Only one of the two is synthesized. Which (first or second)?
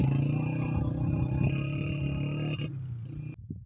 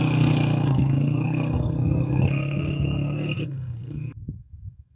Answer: second